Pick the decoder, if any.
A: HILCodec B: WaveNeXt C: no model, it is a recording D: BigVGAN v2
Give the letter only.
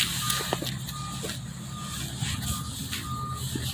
C